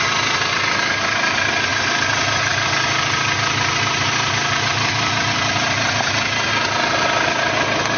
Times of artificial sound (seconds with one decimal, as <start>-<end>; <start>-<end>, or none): none